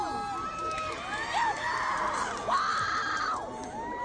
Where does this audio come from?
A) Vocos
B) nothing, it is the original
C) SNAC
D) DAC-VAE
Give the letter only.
B